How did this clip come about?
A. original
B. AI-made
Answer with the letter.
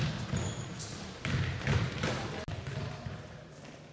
A